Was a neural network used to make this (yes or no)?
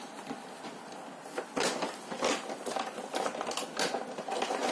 no